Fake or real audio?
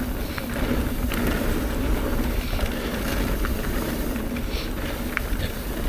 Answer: fake